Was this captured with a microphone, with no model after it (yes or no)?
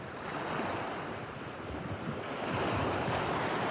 yes